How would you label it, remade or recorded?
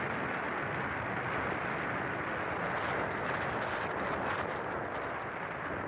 recorded